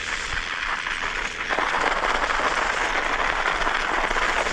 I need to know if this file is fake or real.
real